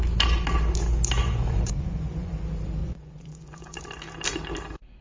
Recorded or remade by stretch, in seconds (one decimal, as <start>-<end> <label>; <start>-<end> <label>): 0.0-1.2 recorded; 1.2-2.3 remade; 2.3-2.8 recorded; 2.8-3.8 remade; 3.8-5.0 recorded